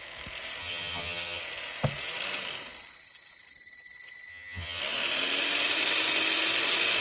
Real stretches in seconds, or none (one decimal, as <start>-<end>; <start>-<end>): 0.0-0.6; 1.4-4.3; 4.8-7.0